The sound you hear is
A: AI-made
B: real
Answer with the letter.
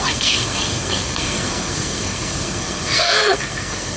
A